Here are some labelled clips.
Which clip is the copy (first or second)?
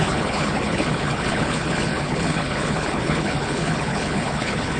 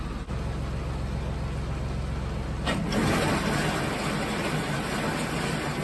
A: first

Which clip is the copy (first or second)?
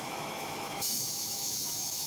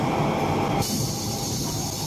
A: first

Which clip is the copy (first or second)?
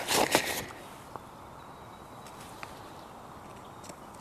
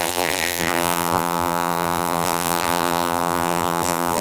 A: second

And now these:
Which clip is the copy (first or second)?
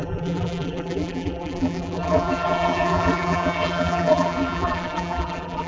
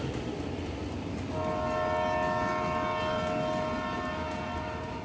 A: first